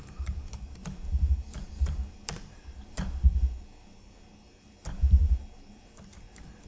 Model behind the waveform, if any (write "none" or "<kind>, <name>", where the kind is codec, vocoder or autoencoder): vocoder, BigVGAN v2